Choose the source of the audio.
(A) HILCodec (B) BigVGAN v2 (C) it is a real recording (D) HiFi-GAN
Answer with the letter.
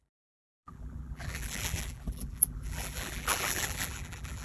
B